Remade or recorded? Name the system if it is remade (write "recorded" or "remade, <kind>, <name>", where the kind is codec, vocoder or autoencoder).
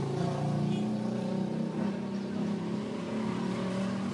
recorded